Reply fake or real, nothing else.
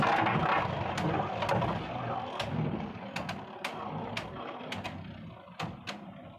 real